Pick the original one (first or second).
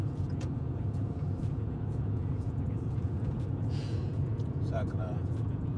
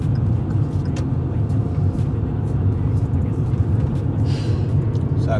second